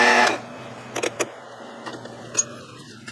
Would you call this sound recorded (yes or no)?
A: yes